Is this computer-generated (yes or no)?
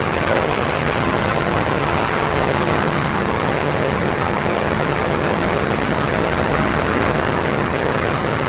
yes